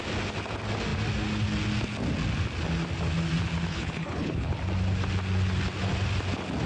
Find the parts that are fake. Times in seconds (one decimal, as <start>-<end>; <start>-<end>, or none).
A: 3.7-4.5